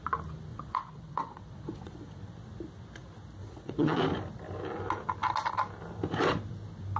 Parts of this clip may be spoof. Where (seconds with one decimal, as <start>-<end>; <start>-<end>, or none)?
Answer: 0.5-2.2; 3.4-4.0